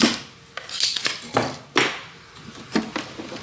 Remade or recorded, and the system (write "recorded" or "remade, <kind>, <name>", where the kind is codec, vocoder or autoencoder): recorded